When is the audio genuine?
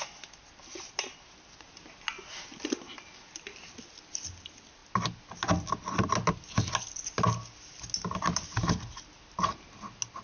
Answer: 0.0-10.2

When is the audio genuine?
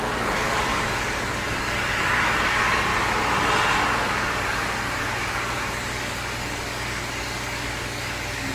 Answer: 2.9-4.0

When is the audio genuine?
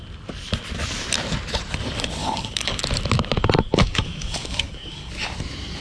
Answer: 0.0-2.2; 2.8-3.7; 5.1-5.8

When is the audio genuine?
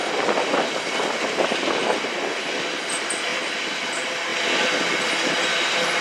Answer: 0.0-6.0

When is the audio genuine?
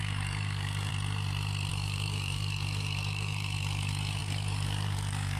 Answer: 0.9-1.7